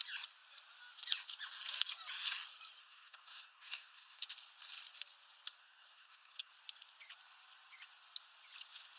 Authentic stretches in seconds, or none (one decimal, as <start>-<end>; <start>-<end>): 0.0-2.8; 4.2-5.6; 6.5-9.0